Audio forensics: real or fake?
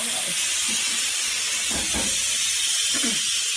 real